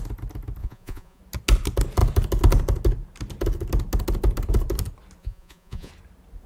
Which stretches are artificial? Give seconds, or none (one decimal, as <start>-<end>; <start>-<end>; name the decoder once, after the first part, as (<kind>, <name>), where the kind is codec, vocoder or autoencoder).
0.6-1.2 (vocoder, Vocos); 5.2-5.9